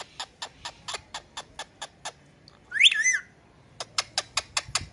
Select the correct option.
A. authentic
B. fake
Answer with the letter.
A